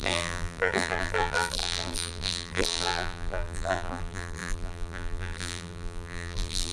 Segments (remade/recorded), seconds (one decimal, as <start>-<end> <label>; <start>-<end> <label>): 0.0-6.7 remade